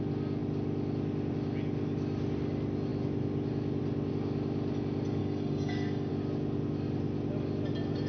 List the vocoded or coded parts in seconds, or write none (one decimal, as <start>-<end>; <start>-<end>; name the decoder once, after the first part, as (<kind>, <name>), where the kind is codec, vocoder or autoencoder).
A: 5.2-6.1 (codec, DAC)